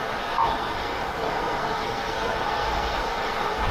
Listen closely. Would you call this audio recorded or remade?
remade